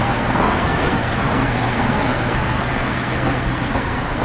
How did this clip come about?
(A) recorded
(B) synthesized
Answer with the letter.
B